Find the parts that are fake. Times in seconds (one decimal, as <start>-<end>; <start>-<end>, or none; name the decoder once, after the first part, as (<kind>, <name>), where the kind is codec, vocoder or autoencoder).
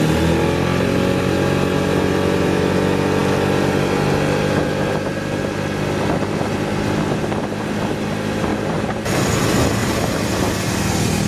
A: 8.5-9.3 (vocoder, BigVGAN v2)